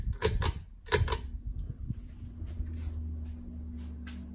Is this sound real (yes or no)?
yes